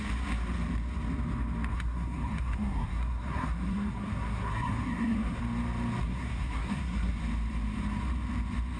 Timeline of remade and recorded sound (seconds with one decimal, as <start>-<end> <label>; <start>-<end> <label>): 0.0-1.7 recorded; 1.7-5.4 remade; 5.4-6.0 recorded; 6.0-7.2 remade; 7.2-8.8 recorded

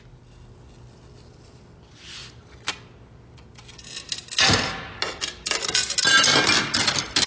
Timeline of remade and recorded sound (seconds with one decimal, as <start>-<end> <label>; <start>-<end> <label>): 0.0-7.3 recorded

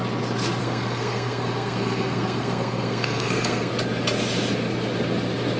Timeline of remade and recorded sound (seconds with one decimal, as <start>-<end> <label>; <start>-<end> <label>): 0.0-0.6 recorded; 0.6-3.7 remade; 3.7-5.6 recorded

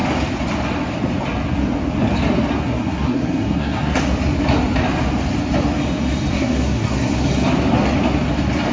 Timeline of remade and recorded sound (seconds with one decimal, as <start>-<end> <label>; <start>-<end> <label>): 0.0-2.6 recorded; 2.6-4.0 remade; 4.0-6.3 recorded; 6.3-7.3 remade; 7.3-8.7 recorded

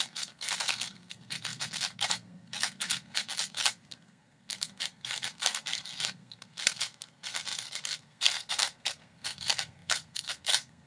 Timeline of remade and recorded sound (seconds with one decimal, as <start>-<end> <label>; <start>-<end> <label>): 0.0-10.9 remade

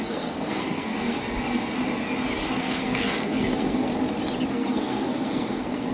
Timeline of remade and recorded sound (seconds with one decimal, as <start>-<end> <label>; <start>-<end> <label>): 0.0-1.2 remade; 1.2-2.6 recorded; 2.6-3.9 remade; 3.9-4.5 recorded; 4.5-5.9 remade

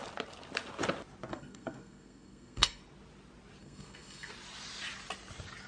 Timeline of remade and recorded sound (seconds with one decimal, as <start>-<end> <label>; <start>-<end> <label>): 0.0-1.3 recorded; 1.3-2.8 remade; 2.8-3.6 recorded; 3.6-4.3 remade; 4.3-5.7 recorded